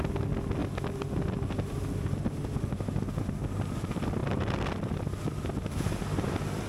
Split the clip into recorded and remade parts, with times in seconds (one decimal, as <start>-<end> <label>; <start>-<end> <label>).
0.0-6.7 recorded